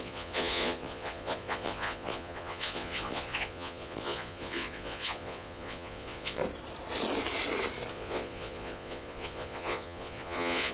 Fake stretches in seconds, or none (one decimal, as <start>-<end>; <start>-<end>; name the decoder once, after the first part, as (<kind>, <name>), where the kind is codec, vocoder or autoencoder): 0.0-6.4 (vocoder, Vocos); 7.9-10.7